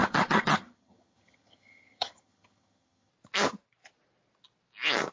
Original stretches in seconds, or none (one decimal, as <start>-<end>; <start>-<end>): 3.1-5.1